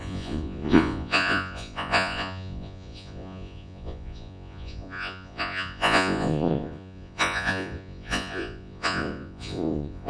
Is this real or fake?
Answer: fake